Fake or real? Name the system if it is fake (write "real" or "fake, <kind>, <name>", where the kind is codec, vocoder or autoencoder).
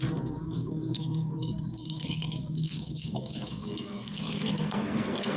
fake, codec, SNAC